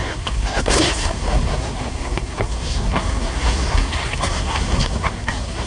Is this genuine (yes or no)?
no